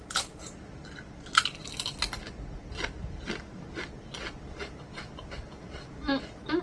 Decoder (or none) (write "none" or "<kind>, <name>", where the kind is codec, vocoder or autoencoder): none